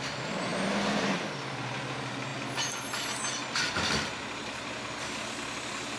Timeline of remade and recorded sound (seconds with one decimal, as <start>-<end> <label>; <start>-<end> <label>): 0.0-6.0 recorded